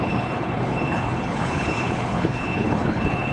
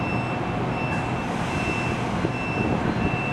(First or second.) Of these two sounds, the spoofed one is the first